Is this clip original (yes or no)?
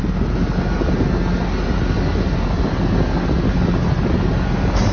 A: yes